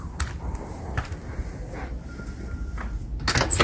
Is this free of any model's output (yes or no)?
yes